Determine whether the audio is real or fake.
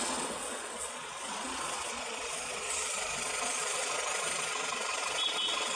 fake